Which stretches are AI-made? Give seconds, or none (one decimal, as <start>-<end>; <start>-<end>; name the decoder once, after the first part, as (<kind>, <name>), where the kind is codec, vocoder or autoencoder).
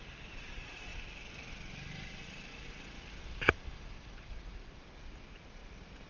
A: none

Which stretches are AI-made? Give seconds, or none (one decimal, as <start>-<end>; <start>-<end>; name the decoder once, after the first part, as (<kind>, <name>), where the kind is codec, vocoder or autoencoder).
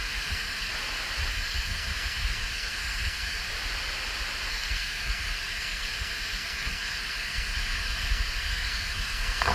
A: 0.0-0.7 (codec, SNAC); 1.3-3.5; 4.5-9.5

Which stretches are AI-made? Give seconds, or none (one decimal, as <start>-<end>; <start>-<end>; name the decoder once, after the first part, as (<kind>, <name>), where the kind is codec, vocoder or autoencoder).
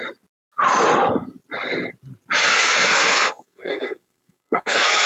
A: 2.5-5.1 (codec, SNAC)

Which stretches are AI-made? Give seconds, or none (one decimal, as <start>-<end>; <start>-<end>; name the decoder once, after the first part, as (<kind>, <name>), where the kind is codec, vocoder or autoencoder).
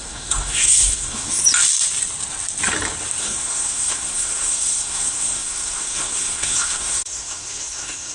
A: 0.0-1.4 (codec, SNAC); 3.2-8.1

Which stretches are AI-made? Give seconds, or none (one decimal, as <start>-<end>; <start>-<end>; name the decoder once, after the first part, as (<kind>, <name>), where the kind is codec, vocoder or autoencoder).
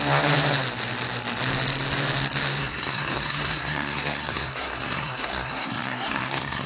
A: 2.6-6.7 (codec, SNAC)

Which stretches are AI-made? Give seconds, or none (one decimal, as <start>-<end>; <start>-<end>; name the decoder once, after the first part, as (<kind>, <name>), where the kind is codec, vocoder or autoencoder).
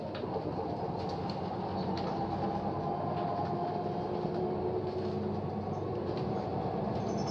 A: none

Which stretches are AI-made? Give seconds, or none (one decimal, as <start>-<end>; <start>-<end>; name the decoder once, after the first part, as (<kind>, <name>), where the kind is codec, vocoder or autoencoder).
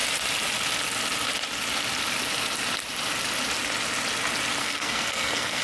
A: 4.6-5.6 (codec, SNAC)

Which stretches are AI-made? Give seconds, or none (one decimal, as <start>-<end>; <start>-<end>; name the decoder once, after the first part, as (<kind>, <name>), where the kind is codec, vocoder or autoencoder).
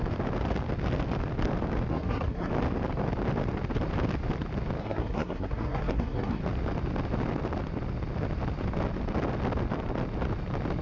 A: 1.9-2.5 (codec, SNAC); 4.8-6.4